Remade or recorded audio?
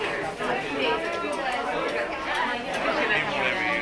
recorded